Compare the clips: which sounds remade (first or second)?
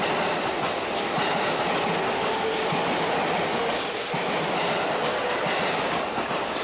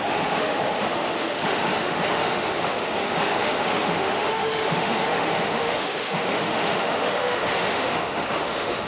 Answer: second